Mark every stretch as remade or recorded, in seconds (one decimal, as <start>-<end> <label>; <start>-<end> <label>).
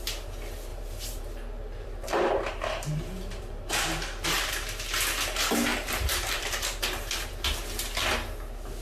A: 0.0-0.7 recorded; 0.7-4.5 remade; 4.5-5.7 recorded; 5.7-7.3 remade; 7.3-8.8 recorded